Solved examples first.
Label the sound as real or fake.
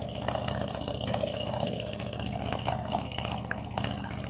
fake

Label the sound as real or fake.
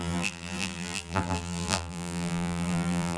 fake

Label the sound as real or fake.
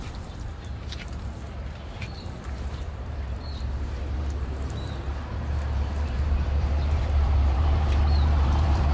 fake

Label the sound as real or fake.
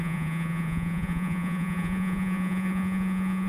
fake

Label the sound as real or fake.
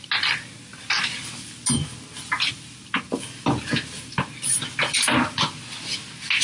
real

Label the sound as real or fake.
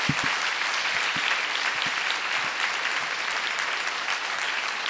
fake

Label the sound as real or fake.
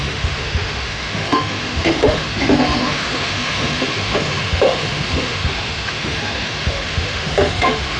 fake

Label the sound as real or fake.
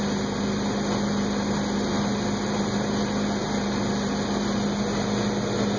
real